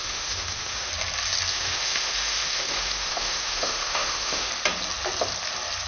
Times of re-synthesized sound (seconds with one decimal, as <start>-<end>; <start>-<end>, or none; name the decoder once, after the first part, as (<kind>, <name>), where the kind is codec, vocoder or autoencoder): 0.0-0.9 (autoencoder, DAC-VAE); 1.5-4.5

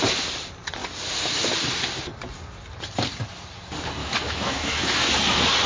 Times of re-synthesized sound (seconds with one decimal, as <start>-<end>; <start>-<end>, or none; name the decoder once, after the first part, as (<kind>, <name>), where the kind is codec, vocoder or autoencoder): 4.0-5.1 (autoencoder, DAC-VAE)

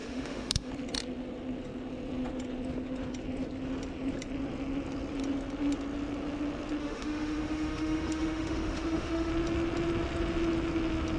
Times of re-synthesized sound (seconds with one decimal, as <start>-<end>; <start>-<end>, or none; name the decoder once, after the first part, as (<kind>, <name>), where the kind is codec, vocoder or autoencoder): 0.0-0.7 (autoencoder, DAC-VAE); 6.8-9.3

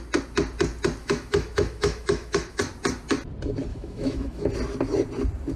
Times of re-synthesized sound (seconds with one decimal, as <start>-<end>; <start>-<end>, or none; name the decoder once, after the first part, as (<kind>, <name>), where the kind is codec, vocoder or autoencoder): 1.0-2.6 (autoencoder, DAC-VAE); 3.7-4.5

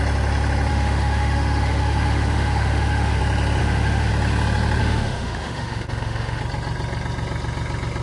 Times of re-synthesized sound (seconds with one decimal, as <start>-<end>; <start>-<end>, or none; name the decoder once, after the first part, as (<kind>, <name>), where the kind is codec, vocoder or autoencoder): 0.7-3.2 (autoencoder, DAC-VAE); 3.6-4.1; 4.8-6.4

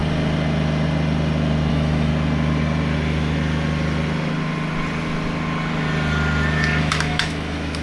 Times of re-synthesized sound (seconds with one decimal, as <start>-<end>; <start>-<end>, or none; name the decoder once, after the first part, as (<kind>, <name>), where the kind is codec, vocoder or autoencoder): 1.7-2.1 (autoencoder, DAC-VAE); 6.8-7.8